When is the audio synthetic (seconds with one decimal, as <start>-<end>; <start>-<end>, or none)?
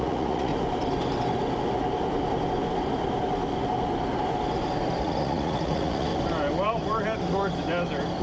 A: 0.0-0.5; 5.0-6.1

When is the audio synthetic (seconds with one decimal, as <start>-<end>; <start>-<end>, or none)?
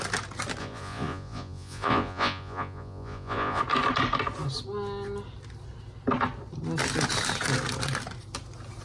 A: 0.6-3.6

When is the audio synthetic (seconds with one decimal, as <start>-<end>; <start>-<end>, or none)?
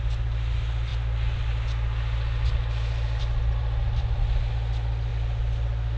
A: none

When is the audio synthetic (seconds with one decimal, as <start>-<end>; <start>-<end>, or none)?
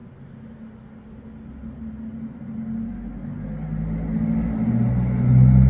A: none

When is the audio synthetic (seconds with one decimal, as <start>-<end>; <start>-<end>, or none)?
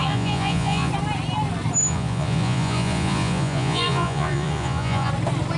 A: 0.0-0.9; 1.8-5.1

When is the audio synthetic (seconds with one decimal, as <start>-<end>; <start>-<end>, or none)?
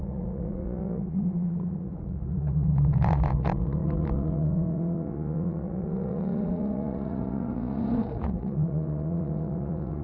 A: 0.0-10.0